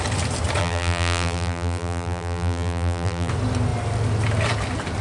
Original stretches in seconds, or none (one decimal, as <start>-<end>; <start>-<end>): 0.0-0.6; 3.3-5.0